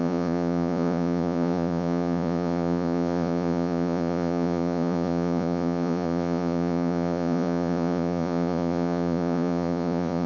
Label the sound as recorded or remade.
remade